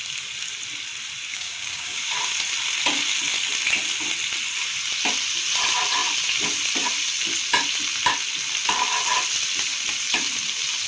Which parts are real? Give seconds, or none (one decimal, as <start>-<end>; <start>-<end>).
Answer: 0.0-1.3; 2.0-10.9